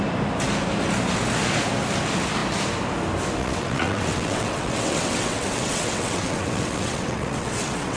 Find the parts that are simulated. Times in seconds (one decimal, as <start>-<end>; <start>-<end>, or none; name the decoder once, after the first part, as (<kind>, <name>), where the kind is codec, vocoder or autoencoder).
3.4-8.0 (vocoder, WaveNeXt)